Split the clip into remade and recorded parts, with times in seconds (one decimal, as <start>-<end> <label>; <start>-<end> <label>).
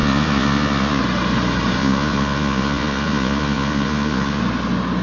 0.0-1.0 remade; 1.0-1.8 recorded; 1.8-4.4 remade; 4.4-5.0 recorded